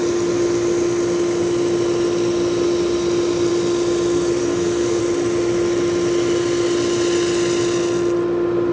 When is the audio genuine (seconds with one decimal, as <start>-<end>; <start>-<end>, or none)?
0.0-4.4; 5.0-8.7